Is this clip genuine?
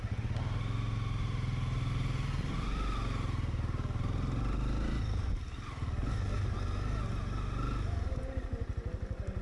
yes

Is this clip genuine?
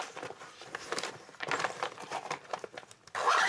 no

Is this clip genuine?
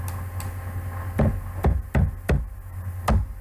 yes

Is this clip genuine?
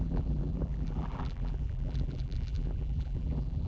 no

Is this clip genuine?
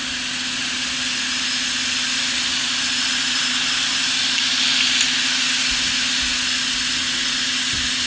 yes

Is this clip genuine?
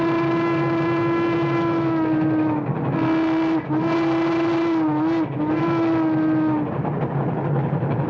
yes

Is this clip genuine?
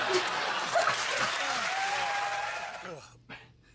yes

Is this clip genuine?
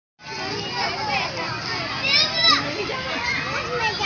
yes